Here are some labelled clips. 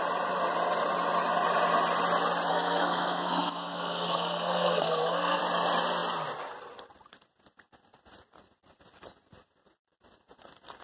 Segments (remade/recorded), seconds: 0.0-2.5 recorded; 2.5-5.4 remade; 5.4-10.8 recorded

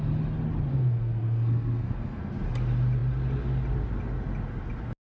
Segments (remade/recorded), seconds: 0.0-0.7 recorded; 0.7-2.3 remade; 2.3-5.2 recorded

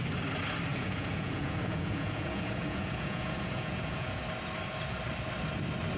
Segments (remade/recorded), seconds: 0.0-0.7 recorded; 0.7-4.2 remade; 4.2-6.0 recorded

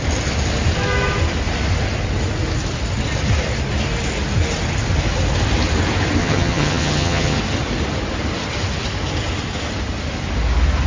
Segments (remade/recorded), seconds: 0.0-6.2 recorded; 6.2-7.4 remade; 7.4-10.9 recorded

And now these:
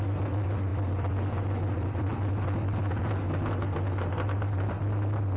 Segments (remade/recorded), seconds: 0.0-5.4 recorded